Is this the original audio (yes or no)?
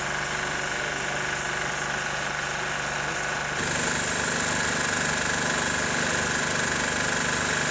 yes